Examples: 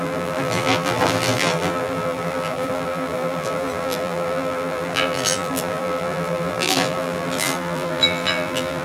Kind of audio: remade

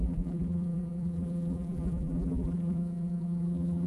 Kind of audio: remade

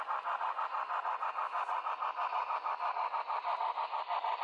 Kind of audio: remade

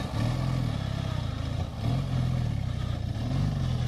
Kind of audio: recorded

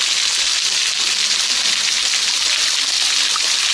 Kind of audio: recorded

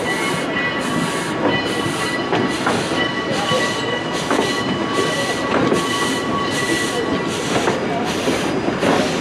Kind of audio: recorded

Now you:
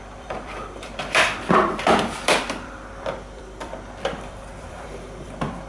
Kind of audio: remade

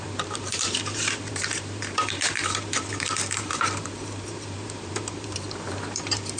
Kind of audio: remade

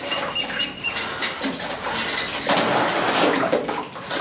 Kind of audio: recorded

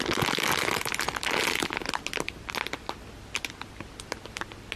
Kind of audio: recorded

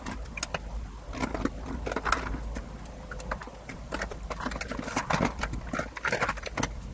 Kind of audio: recorded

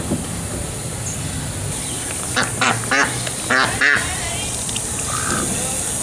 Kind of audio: recorded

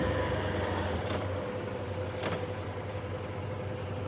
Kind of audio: recorded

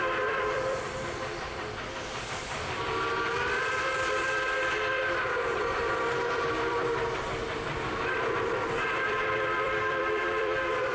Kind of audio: remade